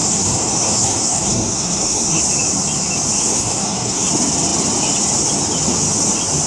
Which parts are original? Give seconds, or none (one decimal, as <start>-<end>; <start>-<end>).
2.2-3.2; 4.1-6.5